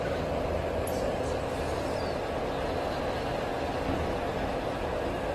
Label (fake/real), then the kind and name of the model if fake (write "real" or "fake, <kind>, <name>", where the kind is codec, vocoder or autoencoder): real